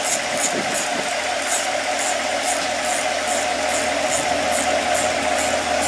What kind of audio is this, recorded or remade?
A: recorded